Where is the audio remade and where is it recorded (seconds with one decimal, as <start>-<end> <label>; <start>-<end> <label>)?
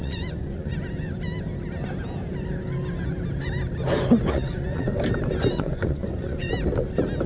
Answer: 0.0-0.7 remade; 0.7-4.3 recorded; 4.3-4.9 remade; 4.9-5.5 recorded; 5.5-6.5 remade; 6.5-7.3 recorded